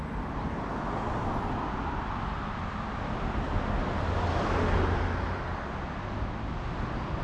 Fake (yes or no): no